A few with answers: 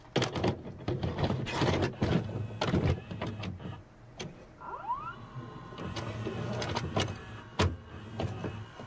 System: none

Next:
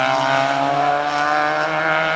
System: none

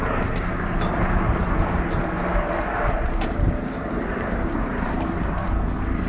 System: vocoder, BigVGAN v2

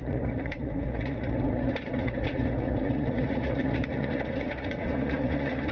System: vocoder, Vocos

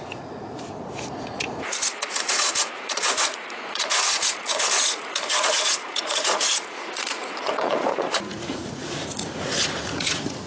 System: vocoder, Vocos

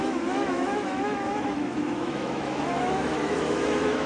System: autoencoder, DAC-VAE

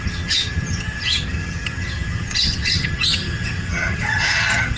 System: vocoder, HiFi-GAN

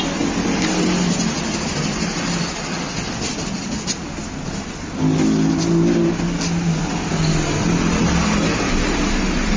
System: none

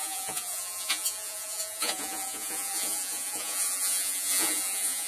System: vocoder, Vocos